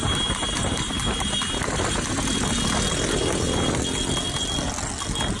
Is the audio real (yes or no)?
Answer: yes